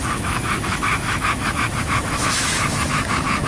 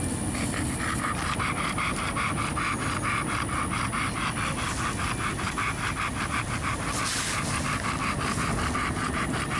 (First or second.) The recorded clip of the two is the second